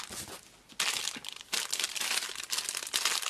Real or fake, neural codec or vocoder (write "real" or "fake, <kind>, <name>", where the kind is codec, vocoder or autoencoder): real